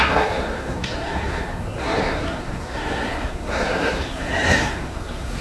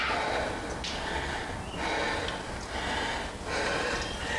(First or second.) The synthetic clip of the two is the first